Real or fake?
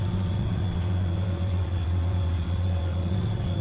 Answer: fake